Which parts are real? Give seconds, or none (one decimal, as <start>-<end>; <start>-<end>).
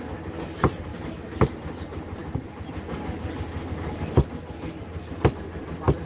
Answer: 0.0-0.9; 1.6-6.1